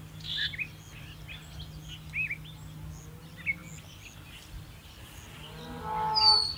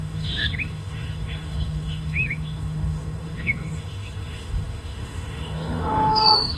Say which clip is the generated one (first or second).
second